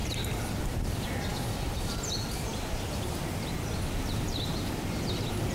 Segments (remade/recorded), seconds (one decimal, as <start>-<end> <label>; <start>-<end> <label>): 0.0-5.5 recorded